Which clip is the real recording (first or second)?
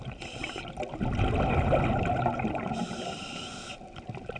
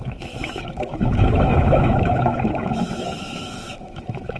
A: first